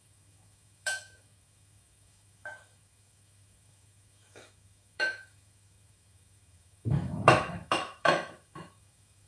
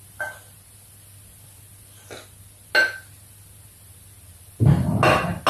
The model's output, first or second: first